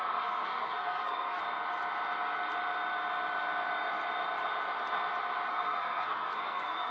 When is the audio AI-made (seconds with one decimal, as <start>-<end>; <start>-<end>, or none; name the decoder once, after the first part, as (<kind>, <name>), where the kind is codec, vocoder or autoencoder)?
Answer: 0.0-1.4 (codec, SNAC); 5.5-6.9